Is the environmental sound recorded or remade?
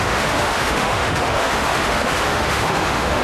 remade